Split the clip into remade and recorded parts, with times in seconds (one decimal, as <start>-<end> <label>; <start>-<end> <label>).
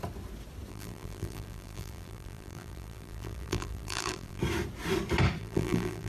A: 0.0-0.7 recorded; 0.7-4.4 remade; 4.4-5.4 recorded; 5.4-6.1 remade